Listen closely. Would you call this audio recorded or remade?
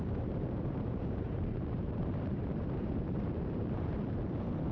remade